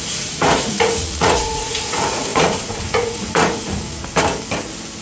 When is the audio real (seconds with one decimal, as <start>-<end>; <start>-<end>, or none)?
4.0-5.0